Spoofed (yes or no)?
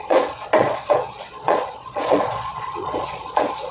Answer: yes